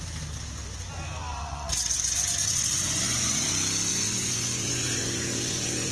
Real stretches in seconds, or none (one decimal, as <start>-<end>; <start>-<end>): 0.0-1.3; 3.5-3.9